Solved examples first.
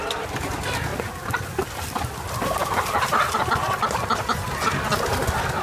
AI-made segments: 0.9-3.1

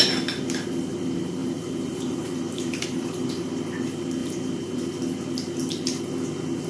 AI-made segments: 1.4-3.5; 4.2-4.8

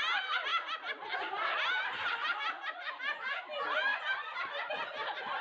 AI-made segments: 3.9-4.7

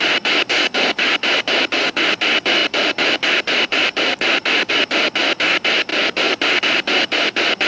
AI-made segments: 2.6-4.7

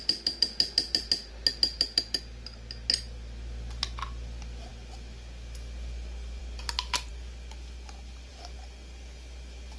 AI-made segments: none

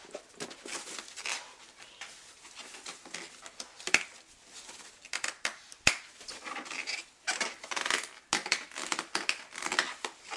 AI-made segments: 5.5-6.4